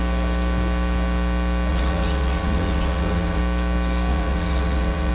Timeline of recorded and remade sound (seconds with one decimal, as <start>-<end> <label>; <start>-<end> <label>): 0.0-1.7 recorded; 1.7-3.4 remade; 3.4-4.1 recorded; 4.1-5.1 remade